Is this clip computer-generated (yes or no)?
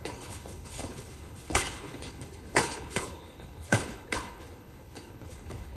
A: yes